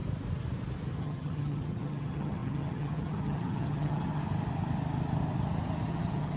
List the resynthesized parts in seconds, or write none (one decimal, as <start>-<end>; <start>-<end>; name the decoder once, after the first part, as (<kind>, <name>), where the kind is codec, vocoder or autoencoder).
1.0-4.2 (vocoder, HiFi-GAN); 5.9-6.4